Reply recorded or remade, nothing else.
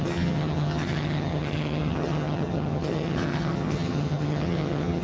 remade